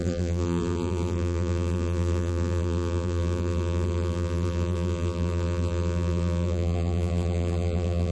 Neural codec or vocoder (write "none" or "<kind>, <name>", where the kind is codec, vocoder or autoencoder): vocoder, BigVGAN v2